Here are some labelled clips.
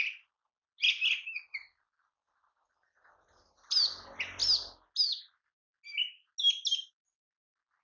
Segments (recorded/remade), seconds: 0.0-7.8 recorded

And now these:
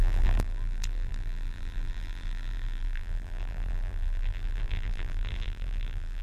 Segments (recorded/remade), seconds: 0.0-6.2 remade

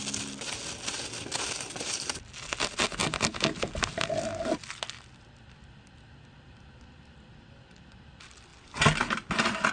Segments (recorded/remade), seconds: 0.0-9.7 recorded

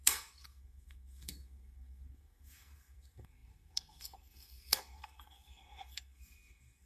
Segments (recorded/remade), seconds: 0.0-6.9 remade

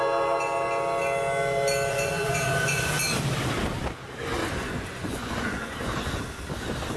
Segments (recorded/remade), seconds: 0.0-1.9 recorded; 1.9-2.9 remade; 2.9-4.4 recorded; 4.4-6.2 remade; 6.2-7.0 recorded